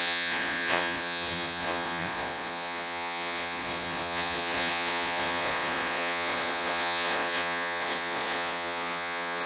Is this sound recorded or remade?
remade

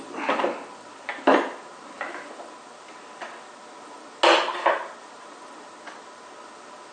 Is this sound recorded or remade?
recorded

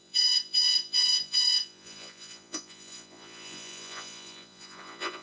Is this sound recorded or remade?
remade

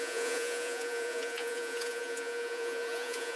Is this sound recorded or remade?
remade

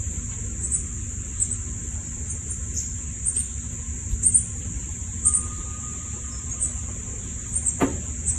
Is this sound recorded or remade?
recorded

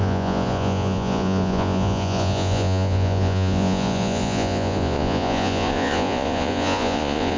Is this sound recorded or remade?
remade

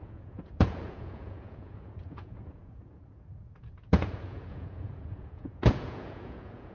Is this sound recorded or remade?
remade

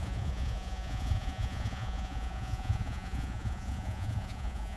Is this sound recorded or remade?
remade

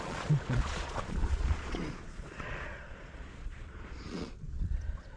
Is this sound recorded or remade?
remade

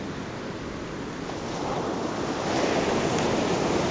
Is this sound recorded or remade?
recorded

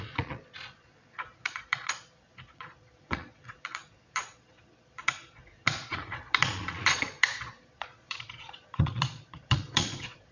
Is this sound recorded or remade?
remade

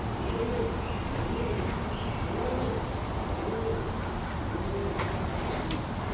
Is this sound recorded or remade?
recorded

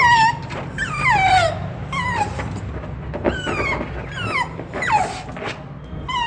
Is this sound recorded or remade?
recorded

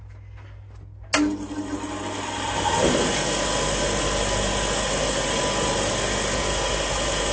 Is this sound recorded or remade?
recorded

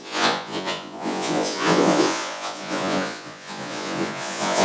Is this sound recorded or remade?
remade